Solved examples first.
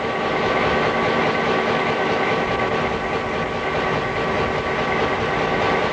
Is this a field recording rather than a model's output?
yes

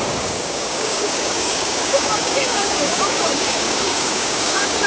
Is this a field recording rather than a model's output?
no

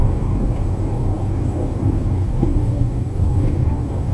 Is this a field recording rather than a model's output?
no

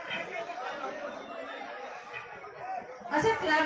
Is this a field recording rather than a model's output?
yes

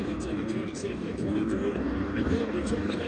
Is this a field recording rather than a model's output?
no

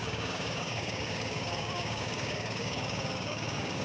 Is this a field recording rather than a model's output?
no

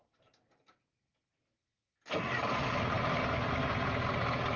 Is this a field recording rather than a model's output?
yes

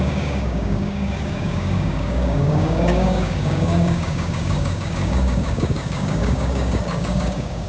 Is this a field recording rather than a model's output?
no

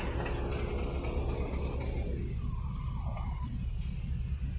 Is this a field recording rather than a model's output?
yes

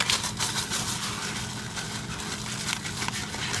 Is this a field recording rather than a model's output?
yes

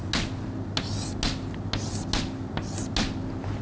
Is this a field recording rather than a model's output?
yes